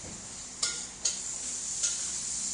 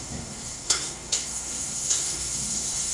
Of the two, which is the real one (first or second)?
first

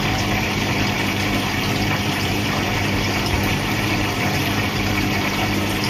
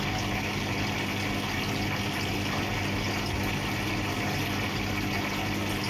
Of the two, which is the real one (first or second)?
second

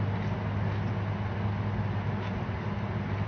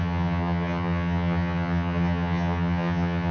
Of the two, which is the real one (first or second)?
first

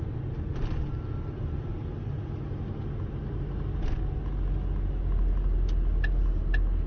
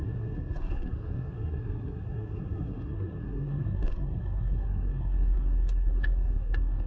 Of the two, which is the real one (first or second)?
first